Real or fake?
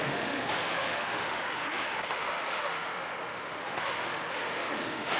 fake